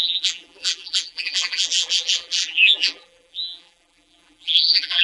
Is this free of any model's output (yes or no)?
no